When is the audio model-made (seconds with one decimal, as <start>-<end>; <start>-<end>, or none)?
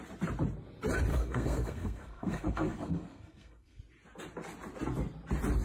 1.1-3.8